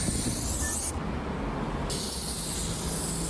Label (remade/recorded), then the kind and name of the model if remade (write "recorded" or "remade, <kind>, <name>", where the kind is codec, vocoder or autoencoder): recorded